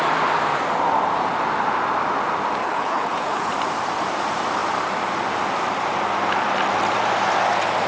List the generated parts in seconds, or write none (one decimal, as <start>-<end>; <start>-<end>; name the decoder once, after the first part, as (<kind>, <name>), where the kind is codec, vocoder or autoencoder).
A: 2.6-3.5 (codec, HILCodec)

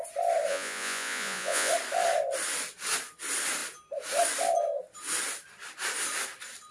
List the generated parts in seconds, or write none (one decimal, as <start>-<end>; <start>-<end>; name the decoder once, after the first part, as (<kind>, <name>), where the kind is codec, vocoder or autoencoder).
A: 0.5-1.7 (vocoder, Vocos)

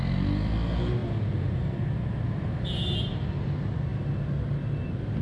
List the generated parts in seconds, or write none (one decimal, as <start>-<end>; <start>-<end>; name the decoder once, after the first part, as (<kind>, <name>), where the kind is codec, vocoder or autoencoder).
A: none

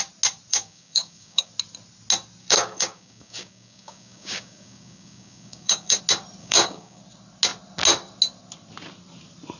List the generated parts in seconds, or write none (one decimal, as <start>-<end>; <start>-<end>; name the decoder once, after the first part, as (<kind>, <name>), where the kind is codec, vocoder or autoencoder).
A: 0.5-1.5 (codec, DAC); 2.4-6.0; 6.4-7.0

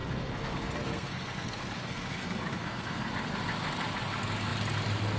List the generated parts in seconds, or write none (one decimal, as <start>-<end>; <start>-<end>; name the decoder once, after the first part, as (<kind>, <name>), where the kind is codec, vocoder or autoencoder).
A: 0.0-3.1 (codec, SNAC)

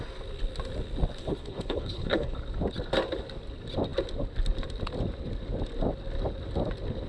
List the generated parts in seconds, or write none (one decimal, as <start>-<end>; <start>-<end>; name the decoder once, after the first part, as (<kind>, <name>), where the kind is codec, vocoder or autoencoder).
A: 1.2-2.4 (codec, HILCodec)